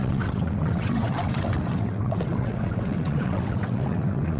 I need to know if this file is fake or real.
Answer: fake